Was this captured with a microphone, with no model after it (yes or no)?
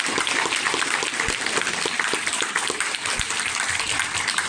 no